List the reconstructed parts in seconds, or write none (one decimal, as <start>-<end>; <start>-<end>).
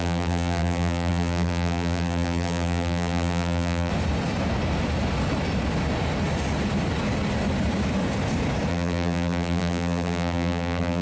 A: 0.0-3.9; 8.7-11.0